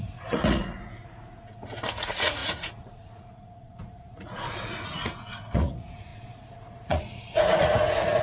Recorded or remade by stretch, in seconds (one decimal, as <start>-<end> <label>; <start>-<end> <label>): 0.0-8.2 remade